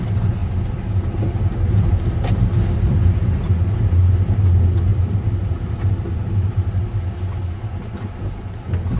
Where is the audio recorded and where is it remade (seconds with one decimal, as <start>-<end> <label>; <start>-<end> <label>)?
0.0-0.4 recorded; 0.4-3.5 remade; 3.5-4.9 recorded; 4.9-6.1 remade; 6.1-9.0 recorded